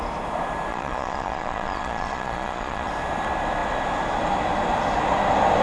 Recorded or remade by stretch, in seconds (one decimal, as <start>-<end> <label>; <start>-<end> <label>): 0.0-0.7 recorded; 0.7-2.9 remade; 2.9-5.6 recorded